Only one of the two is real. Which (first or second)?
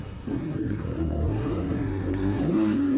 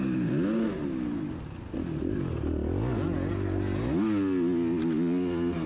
second